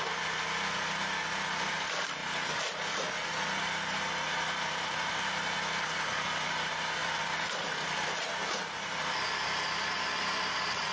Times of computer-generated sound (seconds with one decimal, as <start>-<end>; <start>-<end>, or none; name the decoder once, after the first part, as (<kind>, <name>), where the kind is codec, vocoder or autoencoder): 2.2-2.9 (vocoder, BigVGAN v2); 7.0-8.3